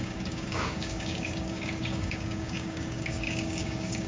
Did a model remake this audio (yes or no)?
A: yes